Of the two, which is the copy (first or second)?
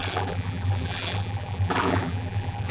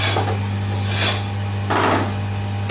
first